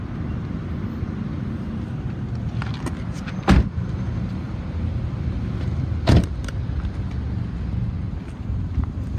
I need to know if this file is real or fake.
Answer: real